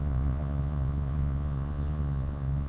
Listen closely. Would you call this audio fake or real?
fake